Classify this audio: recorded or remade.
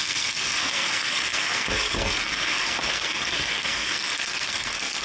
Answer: remade